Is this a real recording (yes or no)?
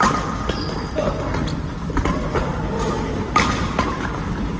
yes